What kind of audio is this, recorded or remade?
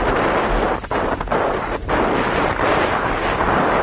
recorded